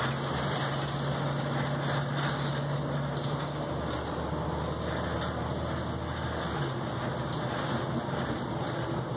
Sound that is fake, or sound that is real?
real